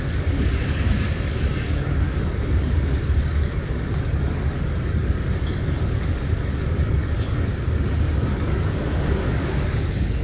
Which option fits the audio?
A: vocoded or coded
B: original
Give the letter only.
A